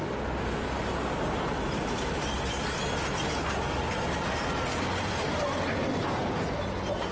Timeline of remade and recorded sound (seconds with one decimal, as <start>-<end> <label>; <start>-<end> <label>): 0.0-7.1 recorded